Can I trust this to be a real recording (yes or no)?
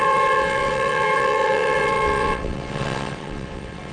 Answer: no